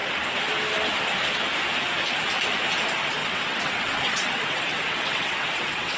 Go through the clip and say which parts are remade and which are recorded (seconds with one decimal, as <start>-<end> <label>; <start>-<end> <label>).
0.0-3.2 recorded; 3.2-6.0 remade